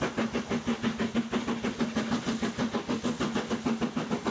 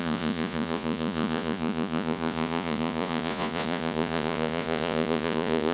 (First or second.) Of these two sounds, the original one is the first